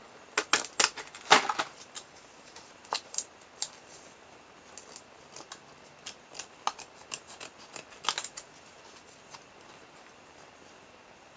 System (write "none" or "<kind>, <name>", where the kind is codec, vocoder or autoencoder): none